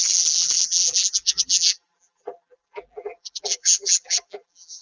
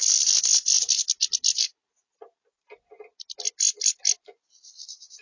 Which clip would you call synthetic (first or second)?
first